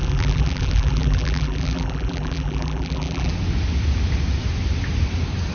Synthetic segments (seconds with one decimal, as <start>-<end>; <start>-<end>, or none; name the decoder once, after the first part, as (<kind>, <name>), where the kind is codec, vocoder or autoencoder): 0.0-3.3 (vocoder, BigVGAN v2)